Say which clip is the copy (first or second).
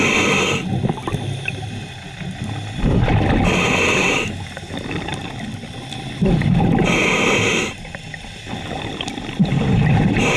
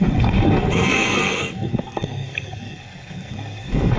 second